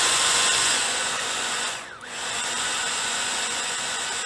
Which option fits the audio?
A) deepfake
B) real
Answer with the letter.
A